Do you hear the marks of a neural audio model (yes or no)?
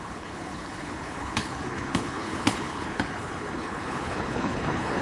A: yes